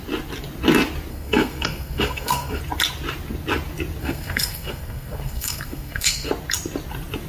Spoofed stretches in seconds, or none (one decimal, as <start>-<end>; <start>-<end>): 1.1-2.6; 4.0-6.3